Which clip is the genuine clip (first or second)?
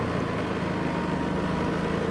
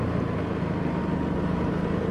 first